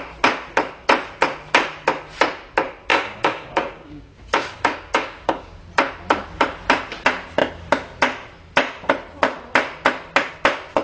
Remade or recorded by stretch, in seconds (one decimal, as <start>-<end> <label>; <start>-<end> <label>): 0.0-2.9 recorded; 2.9-5.6 remade; 5.6-10.8 recorded